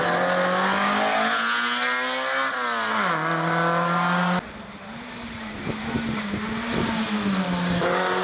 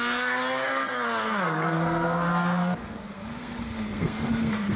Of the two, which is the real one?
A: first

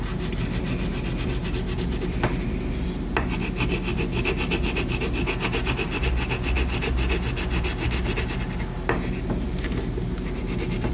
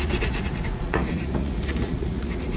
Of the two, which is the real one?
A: first